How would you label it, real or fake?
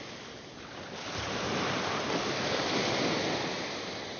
real